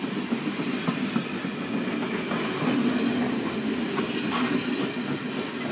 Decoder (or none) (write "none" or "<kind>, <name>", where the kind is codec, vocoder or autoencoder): none